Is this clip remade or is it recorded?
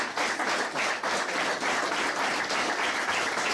recorded